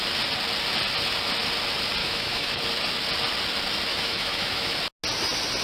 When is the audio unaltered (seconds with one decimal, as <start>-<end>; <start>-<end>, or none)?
0.0-2.0; 2.6-3.9; 4.8-5.6

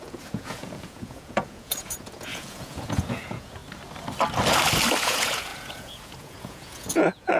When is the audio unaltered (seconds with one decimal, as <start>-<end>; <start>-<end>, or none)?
3.6-5.0

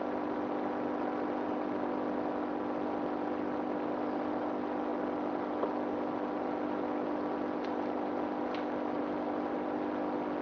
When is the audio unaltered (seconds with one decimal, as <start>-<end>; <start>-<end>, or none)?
0.0-10.4

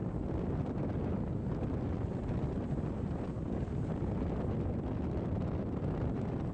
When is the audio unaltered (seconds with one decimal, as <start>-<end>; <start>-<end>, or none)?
0.0-6.5

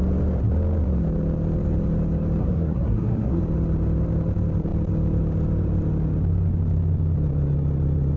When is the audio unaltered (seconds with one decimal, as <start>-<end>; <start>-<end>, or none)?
0.0-2.4; 3.4-8.2

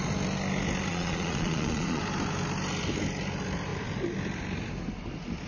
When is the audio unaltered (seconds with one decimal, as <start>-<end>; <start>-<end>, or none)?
0.0-0.9; 2.0-5.5